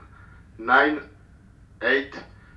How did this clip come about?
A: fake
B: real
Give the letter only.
B